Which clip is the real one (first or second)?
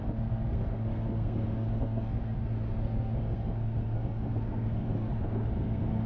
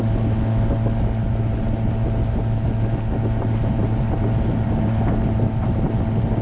second